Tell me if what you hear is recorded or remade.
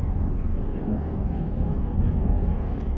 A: remade